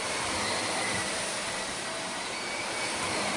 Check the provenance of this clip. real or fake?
fake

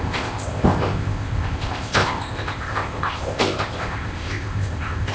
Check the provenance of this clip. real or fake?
fake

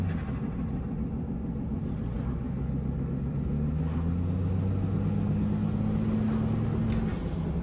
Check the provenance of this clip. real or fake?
real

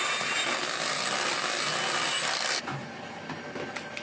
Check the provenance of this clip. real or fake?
real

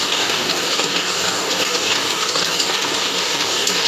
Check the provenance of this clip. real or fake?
fake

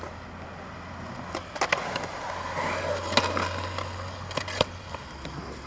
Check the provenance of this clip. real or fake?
real